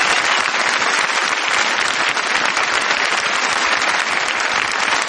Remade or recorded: recorded